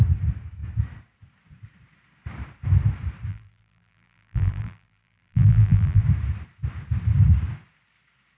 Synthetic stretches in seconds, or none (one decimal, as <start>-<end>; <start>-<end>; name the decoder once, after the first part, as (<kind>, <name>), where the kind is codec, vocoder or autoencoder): 3.3-6.0 (vocoder, BigVGAN v2)